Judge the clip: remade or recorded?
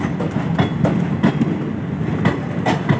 recorded